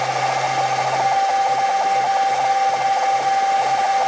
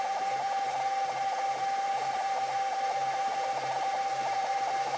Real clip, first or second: first